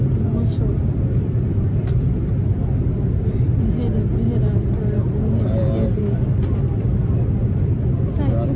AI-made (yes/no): no